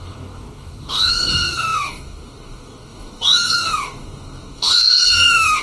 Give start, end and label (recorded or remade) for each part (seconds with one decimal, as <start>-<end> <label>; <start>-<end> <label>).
0.0-5.6 remade